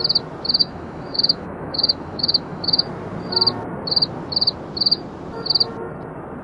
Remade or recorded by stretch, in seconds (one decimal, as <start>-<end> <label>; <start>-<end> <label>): 0.0-0.6 recorded; 0.6-2.8 remade; 2.8-6.4 recorded